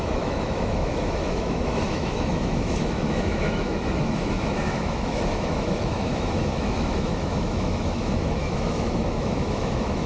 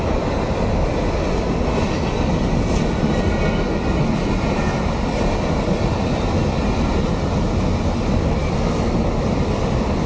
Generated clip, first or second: first